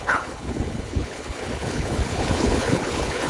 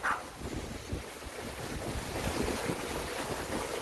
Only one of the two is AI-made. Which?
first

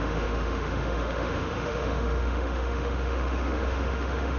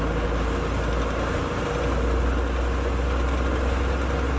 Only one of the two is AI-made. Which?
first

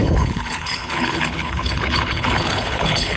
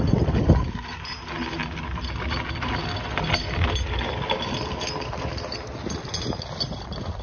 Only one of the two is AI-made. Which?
first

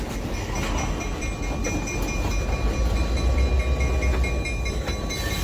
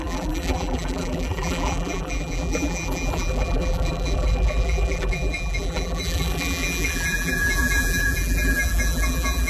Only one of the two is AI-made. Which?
second